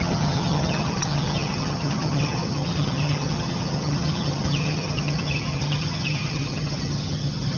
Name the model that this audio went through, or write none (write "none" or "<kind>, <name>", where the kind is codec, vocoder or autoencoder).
vocoder, HiFi-GAN